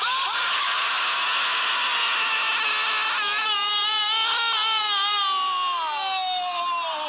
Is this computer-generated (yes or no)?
no